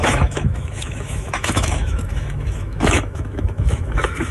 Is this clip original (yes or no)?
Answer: no